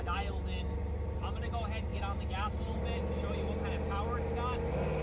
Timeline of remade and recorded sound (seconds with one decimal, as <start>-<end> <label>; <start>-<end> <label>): 0.0-5.0 recorded